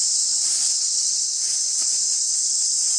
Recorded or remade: remade